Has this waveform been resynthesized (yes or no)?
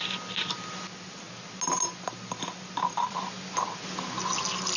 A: no